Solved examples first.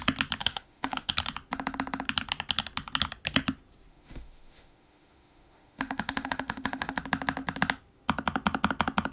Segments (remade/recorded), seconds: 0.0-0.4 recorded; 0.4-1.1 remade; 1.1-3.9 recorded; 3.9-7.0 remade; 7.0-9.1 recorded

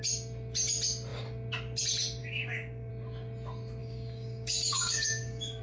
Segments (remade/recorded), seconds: 0.0-2.2 recorded; 2.2-2.9 remade; 2.9-3.8 recorded; 3.8-5.6 remade